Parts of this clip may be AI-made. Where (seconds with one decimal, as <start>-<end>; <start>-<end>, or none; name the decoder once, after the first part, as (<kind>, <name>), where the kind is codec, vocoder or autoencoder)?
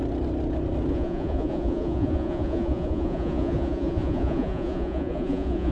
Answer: 0.9-5.7 (vocoder, Vocos)